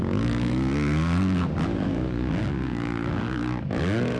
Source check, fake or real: fake